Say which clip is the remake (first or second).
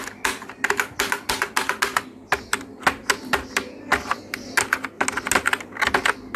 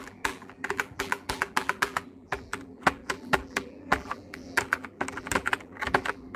second